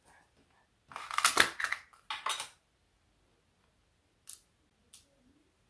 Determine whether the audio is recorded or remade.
recorded